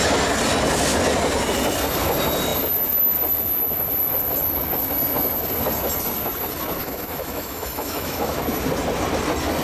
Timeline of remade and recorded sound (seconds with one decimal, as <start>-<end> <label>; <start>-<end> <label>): 0.0-6.8 recorded; 6.8-8.4 remade; 8.4-9.6 recorded